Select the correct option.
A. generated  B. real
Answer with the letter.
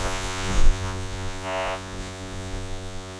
A